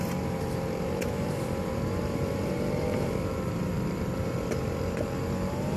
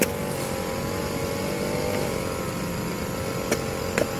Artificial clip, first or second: first